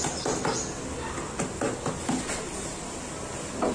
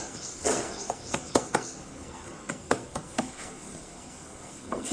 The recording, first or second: first